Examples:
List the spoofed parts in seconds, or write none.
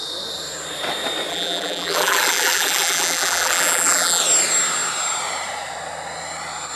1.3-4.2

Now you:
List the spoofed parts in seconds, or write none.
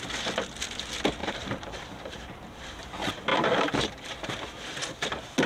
1.2-2.5; 3.3-4.1